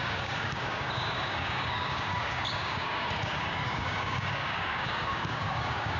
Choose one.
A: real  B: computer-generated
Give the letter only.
B